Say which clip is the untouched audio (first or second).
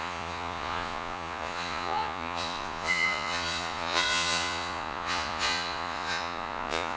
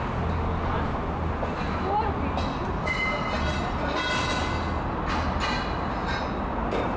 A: second